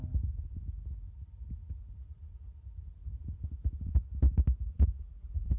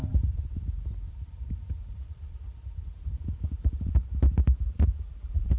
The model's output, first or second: second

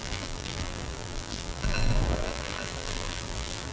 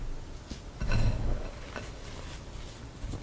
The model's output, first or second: first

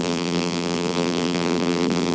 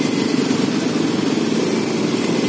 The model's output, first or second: first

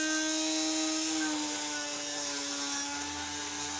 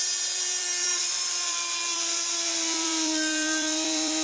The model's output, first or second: second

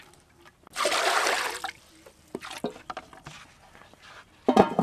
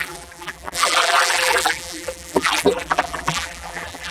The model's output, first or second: second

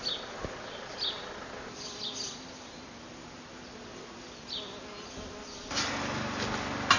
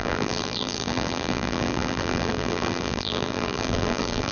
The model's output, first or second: second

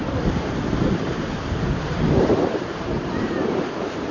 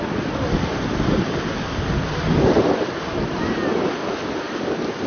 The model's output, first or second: first